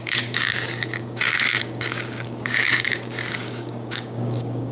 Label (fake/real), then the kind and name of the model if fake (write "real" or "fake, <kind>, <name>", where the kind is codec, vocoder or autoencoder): fake, codec, DAC